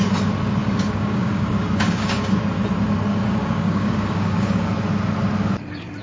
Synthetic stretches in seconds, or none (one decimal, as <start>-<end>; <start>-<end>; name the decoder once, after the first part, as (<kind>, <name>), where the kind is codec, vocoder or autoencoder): 0.6-2.4 (codec, DAC); 3.1-4.7